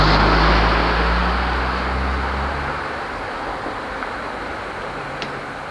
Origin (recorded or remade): recorded